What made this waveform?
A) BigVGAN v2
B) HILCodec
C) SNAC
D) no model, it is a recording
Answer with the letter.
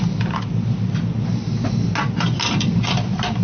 D